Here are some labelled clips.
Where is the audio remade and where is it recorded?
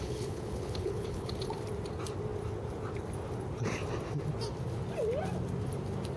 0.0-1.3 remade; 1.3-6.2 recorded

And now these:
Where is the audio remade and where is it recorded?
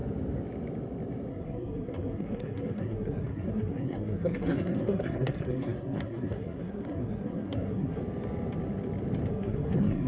0.0-1.3 recorded; 1.3-8.0 remade; 8.0-9.3 recorded; 9.3-10.1 remade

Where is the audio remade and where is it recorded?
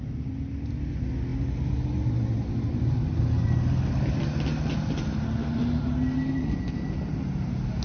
0.0-7.8 recorded